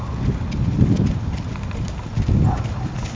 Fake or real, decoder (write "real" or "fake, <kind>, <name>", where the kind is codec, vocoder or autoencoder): real